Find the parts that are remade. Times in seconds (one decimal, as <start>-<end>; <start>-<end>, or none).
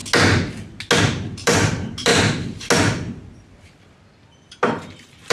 1.0-2.1; 4.7-5.3